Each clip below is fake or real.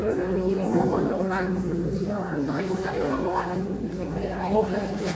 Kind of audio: fake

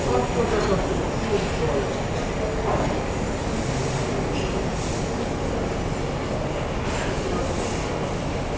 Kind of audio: real